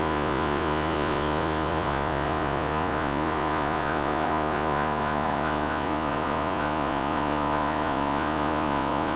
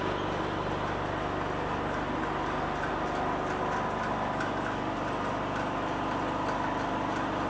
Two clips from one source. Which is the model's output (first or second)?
first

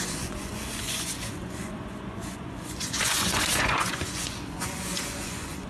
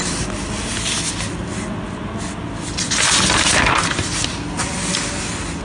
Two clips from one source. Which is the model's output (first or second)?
first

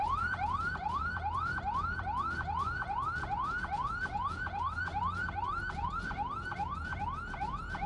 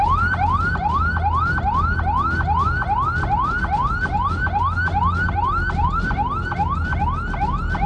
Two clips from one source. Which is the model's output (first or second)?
first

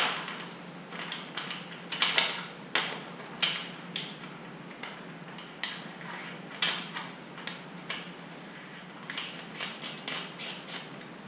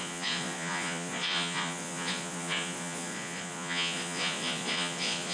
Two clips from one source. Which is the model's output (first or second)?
second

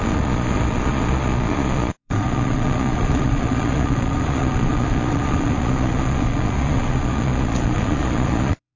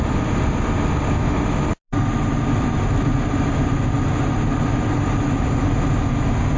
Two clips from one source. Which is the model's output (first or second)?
first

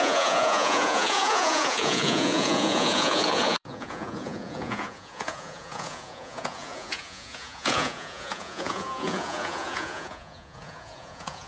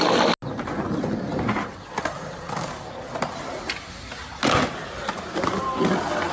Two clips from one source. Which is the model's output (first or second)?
first